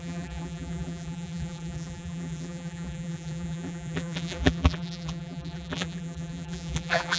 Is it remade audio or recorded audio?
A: remade